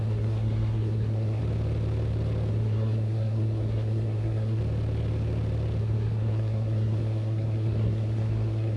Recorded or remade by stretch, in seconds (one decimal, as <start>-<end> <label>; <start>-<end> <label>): 0.0-1.4 remade; 1.4-2.5 recorded; 2.5-4.6 remade; 4.6-5.8 recorded; 5.8-8.8 remade